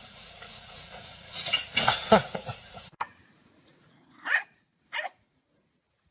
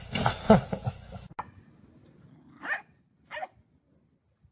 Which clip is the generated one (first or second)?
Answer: first